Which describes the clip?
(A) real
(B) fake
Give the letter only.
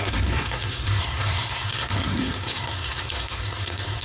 B